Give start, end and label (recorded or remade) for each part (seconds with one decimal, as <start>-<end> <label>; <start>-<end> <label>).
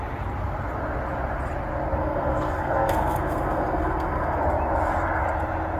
0.0-2.0 recorded; 2.0-4.4 remade; 4.4-5.8 recorded